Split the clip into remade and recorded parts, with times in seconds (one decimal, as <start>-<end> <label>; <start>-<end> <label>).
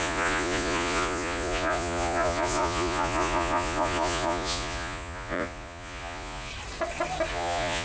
0.0-6.5 remade; 6.5-7.3 recorded; 7.3-7.8 remade